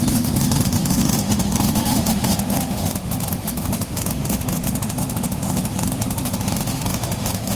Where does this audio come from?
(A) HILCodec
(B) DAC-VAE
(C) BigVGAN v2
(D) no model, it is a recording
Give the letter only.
B